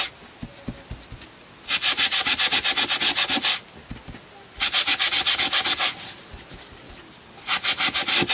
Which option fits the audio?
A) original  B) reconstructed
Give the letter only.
A